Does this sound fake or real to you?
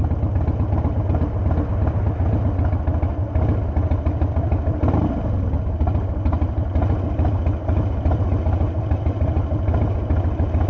real